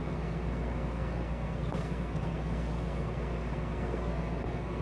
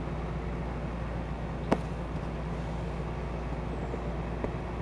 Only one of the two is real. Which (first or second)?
second